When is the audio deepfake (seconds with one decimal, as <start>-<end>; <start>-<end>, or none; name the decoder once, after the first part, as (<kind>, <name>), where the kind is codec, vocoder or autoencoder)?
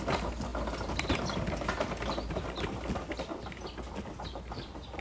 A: none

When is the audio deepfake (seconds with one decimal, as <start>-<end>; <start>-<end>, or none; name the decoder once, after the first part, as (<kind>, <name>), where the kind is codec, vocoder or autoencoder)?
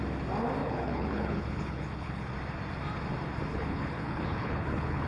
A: 0.6-2.3 (codec, HILCodec); 3.5-5.1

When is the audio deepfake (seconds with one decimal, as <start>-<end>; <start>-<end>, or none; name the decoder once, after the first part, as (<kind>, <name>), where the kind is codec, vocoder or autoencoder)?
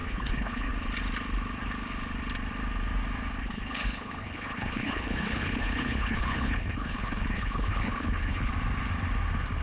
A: 0.0-0.7 (codec, HILCodec); 3.4-8.5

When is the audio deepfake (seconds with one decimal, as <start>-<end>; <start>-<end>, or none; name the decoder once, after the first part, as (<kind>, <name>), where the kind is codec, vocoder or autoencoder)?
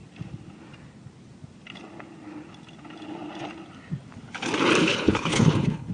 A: 4.8-5.9 (codec, HILCodec)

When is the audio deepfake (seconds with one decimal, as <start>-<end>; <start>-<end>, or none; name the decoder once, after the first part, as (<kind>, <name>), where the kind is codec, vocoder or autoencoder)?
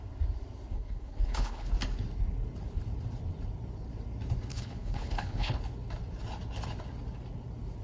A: 0.7-1.7 (codec, HILCodec); 4.5-5.6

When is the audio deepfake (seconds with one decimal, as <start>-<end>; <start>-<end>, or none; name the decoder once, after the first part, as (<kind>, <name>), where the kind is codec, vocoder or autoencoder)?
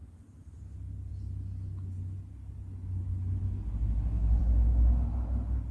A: none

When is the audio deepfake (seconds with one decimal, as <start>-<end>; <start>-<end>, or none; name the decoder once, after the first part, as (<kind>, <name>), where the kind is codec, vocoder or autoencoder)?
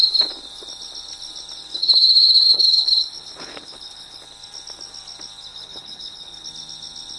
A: 1.8-4.2 (codec, HILCodec); 5.5-6.5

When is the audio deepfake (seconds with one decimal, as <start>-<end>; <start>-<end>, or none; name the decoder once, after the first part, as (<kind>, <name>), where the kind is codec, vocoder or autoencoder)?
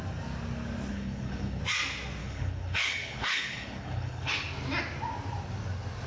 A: 0.9-1.6 (codec, HILCodec); 2.2-4.3